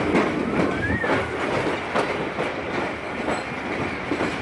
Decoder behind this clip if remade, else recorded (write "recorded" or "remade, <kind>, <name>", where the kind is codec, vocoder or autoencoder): recorded